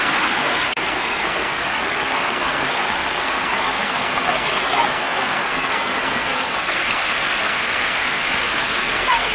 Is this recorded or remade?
remade